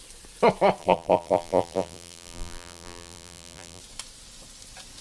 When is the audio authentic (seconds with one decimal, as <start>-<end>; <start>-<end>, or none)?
0.0-0.8; 3.8-5.0